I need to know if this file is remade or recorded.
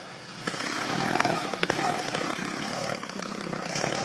remade